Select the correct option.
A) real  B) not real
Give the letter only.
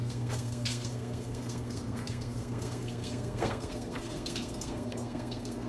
B